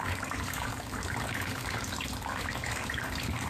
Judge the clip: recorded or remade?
remade